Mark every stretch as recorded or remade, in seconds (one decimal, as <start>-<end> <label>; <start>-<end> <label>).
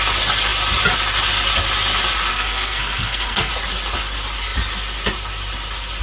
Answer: 0.0-2.3 recorded; 2.3-3.5 remade; 3.5-6.0 recorded